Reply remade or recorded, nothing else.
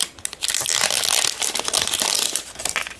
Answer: recorded